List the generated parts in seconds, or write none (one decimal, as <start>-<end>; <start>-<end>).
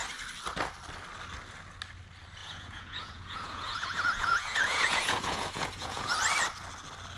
2.4-6.1